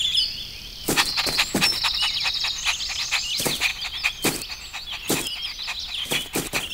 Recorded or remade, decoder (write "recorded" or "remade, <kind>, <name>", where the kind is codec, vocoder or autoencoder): recorded